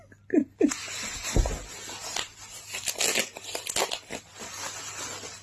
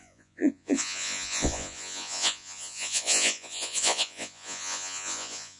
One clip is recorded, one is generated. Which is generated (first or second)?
second